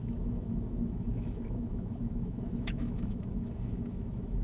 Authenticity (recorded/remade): remade